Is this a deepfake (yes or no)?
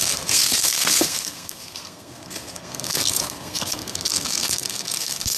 yes